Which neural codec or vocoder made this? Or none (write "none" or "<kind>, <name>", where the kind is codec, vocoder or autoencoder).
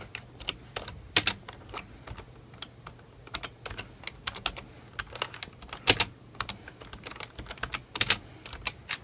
none